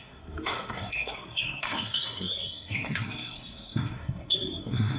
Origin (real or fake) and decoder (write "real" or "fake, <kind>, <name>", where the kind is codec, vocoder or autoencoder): fake, codec, SNAC